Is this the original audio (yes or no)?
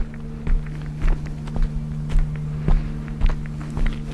yes